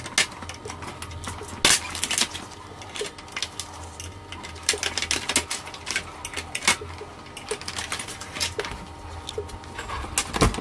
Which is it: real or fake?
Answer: real